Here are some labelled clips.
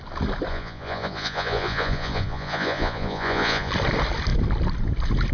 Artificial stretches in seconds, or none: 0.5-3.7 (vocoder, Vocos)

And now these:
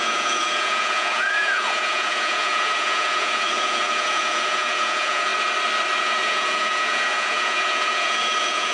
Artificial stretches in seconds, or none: 0.0-5.3 (vocoder, Vocos); 6.0-8.7

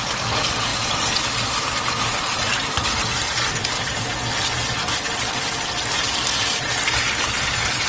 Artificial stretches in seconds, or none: none